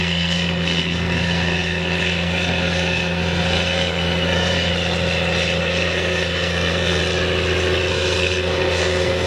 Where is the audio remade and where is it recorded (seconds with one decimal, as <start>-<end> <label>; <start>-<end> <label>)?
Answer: 0.0-4.7 remade; 4.7-5.6 recorded; 5.6-7.0 remade; 7.0-7.9 recorded; 7.9-9.3 remade